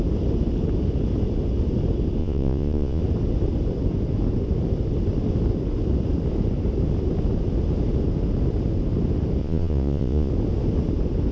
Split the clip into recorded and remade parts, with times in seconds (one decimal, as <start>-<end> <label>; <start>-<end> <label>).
0.0-2.2 recorded; 2.2-3.0 remade; 3.0-9.4 recorded; 9.4-10.3 remade; 10.3-11.3 recorded